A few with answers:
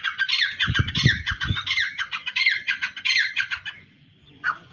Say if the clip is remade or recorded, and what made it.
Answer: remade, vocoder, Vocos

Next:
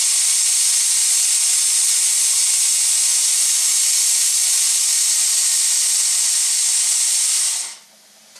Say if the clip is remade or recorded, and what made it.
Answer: recorded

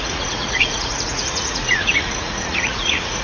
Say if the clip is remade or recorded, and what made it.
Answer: remade, vocoder, Vocos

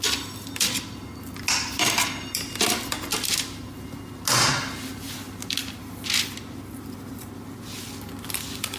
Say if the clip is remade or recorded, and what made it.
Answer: recorded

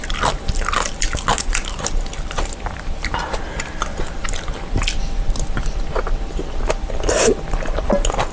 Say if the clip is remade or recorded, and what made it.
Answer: recorded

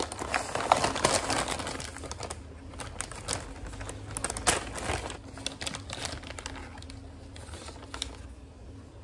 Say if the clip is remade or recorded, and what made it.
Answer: recorded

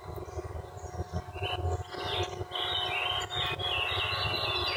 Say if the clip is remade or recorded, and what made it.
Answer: recorded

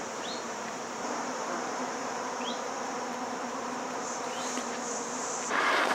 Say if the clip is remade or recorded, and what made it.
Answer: remade, vocoder, BigVGAN v2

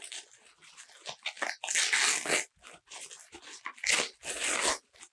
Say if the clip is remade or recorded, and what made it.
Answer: recorded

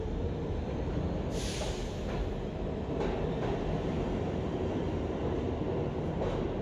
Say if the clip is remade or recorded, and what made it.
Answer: recorded